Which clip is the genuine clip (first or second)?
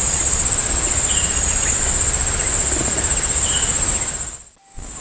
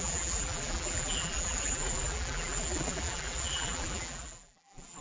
first